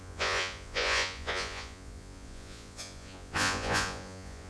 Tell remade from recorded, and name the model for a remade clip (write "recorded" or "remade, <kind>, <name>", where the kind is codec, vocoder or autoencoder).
remade, vocoder, Vocos